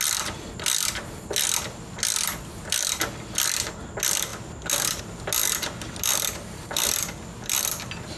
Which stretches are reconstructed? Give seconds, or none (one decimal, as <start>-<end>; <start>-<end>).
none